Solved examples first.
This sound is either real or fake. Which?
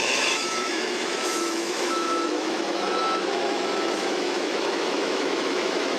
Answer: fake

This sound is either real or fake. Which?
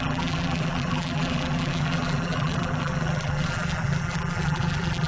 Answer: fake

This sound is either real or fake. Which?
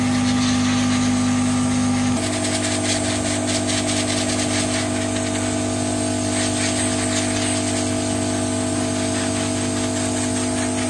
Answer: real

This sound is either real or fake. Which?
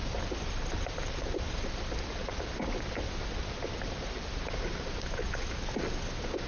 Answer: real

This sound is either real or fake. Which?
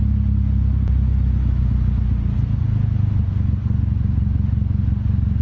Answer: real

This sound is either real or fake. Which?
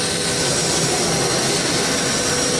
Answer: real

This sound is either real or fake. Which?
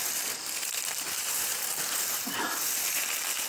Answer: real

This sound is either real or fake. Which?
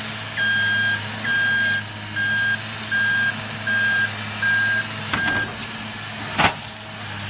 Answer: real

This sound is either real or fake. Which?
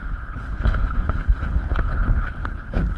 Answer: fake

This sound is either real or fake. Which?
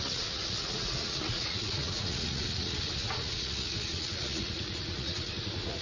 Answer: fake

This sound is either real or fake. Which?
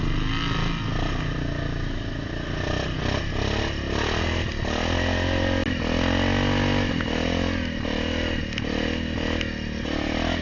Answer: real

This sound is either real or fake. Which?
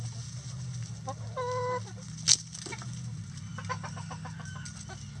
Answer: real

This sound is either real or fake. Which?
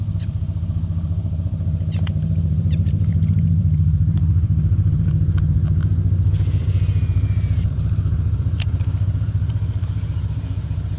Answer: fake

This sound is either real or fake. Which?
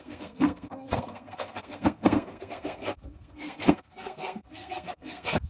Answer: fake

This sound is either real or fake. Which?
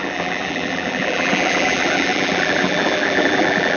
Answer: fake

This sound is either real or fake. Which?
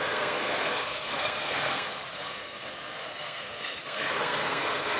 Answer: fake